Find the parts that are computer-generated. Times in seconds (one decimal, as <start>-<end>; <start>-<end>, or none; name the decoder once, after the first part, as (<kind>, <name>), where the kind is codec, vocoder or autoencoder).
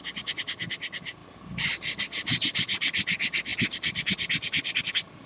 none